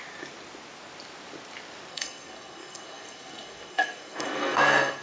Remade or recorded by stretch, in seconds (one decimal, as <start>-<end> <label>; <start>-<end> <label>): 0.0-1.9 recorded; 1.9-5.0 remade